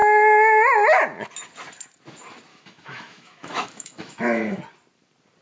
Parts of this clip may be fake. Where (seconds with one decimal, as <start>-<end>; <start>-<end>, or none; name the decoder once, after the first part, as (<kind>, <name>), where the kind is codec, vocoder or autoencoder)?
2.5-4.6 (autoencoder, DAC-VAE)